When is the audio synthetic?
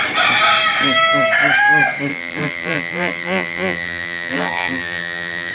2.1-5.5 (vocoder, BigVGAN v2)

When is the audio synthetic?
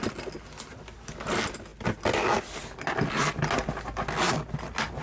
none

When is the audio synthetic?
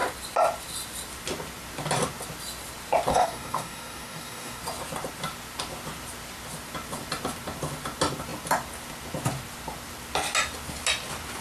3.1-4.6 (codec, DAC)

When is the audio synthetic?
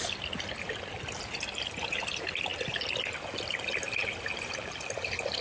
none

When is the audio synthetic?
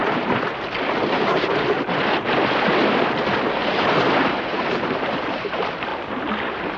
3.7-5.9 (vocoder, BigVGAN v2)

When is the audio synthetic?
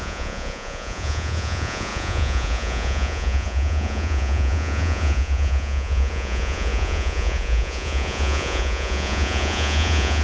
0.0-10.2 (vocoder, Vocos)